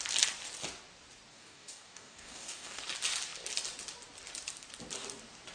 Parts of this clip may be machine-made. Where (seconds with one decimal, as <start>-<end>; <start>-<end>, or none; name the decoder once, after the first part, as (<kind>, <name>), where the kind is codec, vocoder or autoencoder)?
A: 1.3-2.8 (codec, DAC)